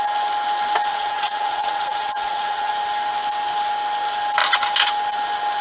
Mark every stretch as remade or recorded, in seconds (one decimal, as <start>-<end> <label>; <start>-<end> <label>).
0.0-0.9 recorded; 0.9-2.7 remade; 2.7-5.6 recorded